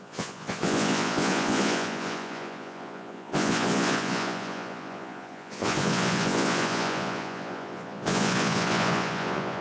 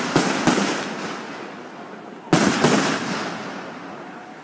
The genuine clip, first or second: second